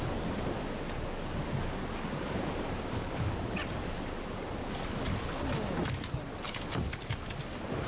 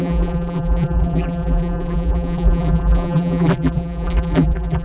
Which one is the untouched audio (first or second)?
first